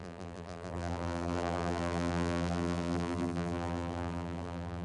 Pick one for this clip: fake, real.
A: fake